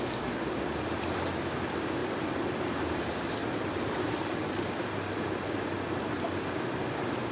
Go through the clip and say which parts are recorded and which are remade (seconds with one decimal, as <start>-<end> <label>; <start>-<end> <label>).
0.0-7.3 recorded